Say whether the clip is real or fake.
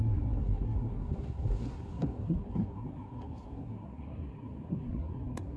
fake